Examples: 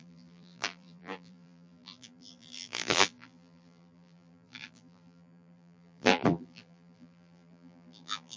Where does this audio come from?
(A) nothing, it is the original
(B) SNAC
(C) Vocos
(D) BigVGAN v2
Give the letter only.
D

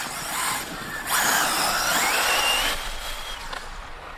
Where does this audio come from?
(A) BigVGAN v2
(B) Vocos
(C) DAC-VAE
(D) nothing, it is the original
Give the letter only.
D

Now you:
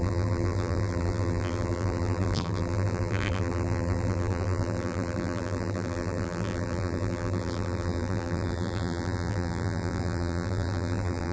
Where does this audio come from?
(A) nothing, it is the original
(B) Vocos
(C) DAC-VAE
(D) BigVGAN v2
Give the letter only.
D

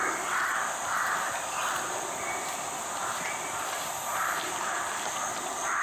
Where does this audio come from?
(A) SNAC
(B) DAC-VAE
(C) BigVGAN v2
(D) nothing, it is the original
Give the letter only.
C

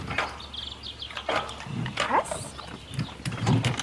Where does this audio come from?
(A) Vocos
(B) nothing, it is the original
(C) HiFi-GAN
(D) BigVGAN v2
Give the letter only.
B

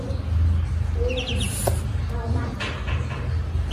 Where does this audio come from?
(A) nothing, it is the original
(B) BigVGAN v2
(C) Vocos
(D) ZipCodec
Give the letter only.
A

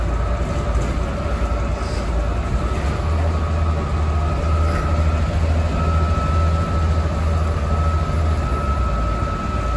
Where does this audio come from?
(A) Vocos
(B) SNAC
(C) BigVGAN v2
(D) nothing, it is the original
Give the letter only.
D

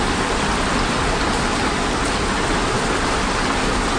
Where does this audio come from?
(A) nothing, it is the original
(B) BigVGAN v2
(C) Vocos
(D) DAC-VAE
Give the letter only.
A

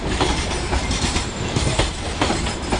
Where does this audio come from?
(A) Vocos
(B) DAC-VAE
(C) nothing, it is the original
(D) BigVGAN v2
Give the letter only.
D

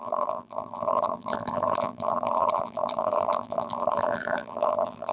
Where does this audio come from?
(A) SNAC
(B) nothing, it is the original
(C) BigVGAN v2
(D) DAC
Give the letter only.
C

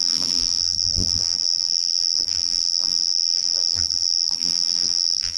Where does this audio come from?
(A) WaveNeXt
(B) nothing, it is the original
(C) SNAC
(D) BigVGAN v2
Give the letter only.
D